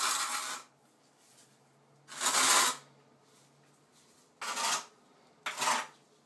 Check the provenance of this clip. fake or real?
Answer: real